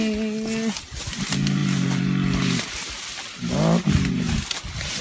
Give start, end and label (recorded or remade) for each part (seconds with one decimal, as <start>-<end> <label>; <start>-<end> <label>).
0.0-5.0 recorded